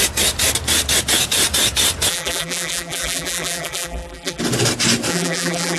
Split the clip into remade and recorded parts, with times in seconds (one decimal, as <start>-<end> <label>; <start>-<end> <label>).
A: 0.0-2.1 recorded; 2.1-4.4 remade; 4.4-5.1 recorded; 5.1-5.8 remade